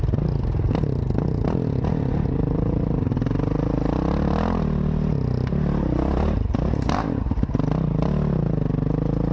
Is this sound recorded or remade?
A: recorded